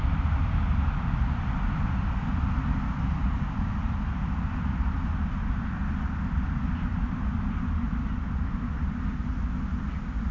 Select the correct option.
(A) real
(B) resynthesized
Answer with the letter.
A